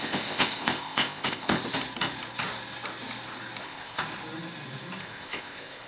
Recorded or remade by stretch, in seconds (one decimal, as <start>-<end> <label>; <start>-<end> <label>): 0.0-1.6 remade; 1.6-3.6 recorded; 3.6-4.0 remade; 4.0-5.0 recorded; 5.0-5.9 remade